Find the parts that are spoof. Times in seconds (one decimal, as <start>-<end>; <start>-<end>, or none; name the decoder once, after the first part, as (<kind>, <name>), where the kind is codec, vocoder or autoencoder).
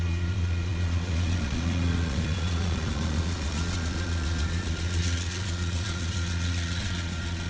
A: 0.0-7.5 (vocoder, Vocos)